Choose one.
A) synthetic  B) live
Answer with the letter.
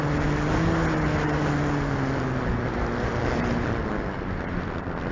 B